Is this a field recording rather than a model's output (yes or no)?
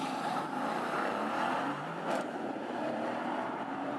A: no